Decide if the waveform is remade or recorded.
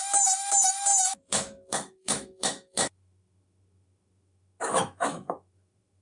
remade